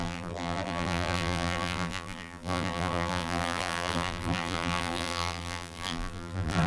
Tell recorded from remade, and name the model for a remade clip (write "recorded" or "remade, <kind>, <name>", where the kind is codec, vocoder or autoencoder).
remade, vocoder, BigVGAN v2